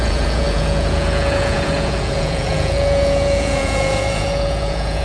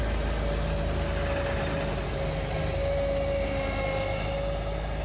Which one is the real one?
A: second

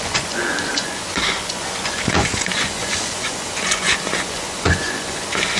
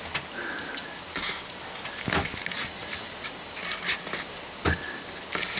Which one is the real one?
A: second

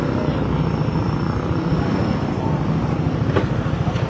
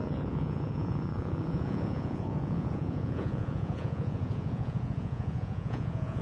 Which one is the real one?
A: first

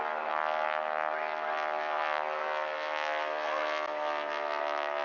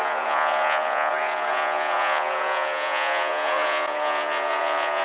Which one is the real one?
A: first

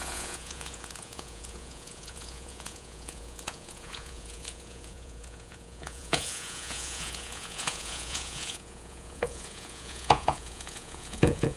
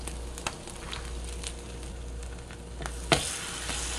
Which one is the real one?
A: second